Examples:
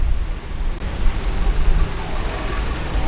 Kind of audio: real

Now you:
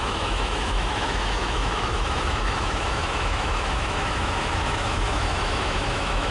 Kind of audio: fake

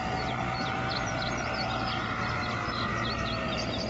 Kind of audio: real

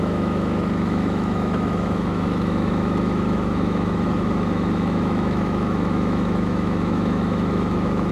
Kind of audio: fake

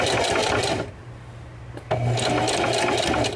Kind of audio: real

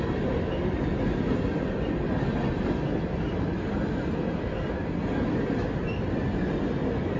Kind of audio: real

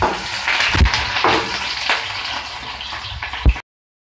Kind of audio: real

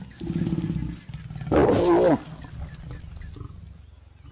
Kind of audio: real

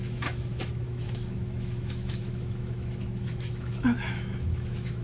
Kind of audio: fake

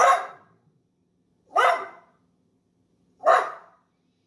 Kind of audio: real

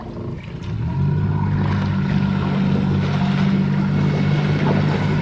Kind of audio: real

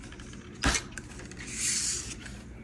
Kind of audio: real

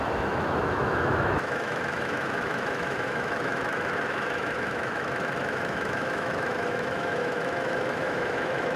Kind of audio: fake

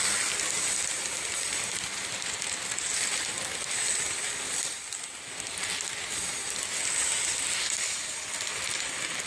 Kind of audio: real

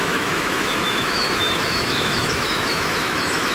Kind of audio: fake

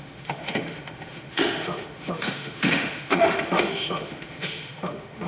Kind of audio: fake